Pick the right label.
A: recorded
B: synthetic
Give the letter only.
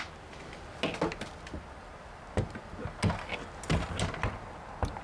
A